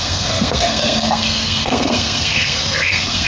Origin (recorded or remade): remade